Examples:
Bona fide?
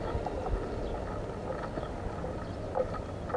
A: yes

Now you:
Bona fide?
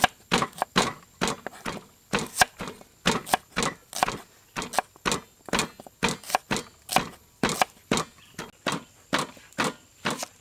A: yes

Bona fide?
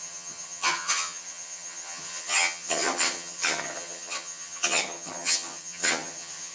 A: no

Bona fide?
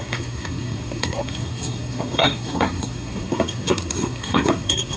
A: no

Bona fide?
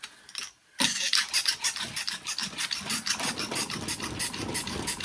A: yes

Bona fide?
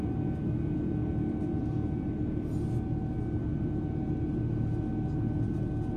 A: yes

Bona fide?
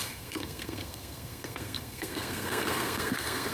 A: no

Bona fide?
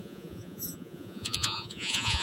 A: no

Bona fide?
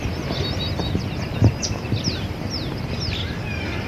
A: yes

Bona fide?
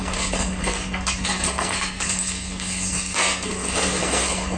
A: no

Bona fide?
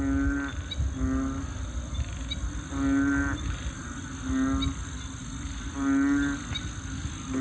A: yes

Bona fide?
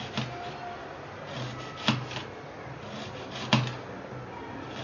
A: yes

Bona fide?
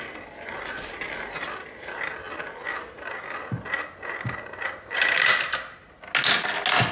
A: yes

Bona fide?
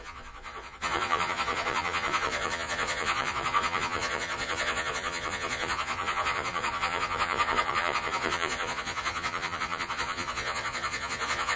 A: no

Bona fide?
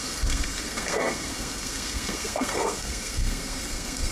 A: no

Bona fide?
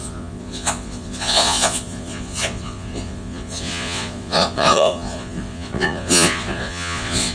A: no